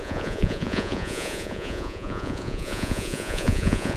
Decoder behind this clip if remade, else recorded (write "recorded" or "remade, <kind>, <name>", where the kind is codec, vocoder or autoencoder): remade, vocoder, Vocos